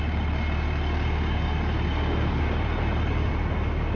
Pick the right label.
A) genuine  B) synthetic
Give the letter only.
A